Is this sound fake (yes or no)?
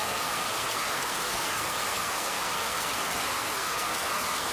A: yes